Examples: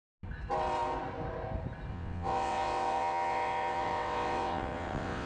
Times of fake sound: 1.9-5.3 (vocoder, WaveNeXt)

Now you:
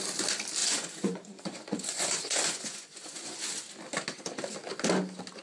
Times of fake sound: 0.6-3.4 (vocoder, Vocos)

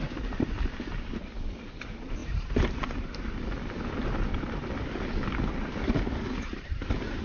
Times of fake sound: none

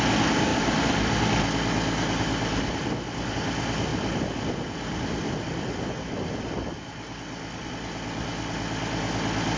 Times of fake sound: none

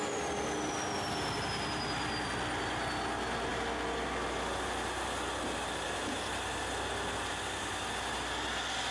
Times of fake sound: none

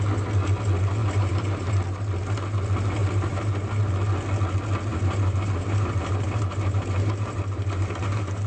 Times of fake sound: 1.0-1.7 (vocoder, BigVGAN v2); 3.0-3.9; 4.9-8.0

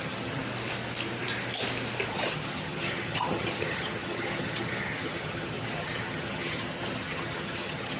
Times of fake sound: 0.0-0.4 (vocoder, HiFi-GAN); 2.1-8.0